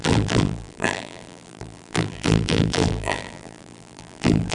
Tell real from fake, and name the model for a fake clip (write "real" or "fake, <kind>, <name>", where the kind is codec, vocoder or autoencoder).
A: fake, vocoder, BigVGAN v2